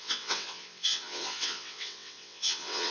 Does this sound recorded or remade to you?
remade